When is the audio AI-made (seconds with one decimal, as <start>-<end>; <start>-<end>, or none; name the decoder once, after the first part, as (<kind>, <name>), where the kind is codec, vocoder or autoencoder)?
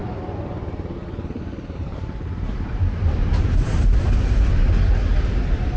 0.0-2.7 (vocoder, BigVGAN v2)